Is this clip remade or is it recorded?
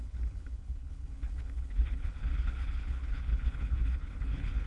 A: remade